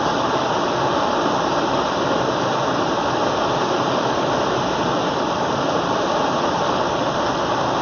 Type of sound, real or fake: fake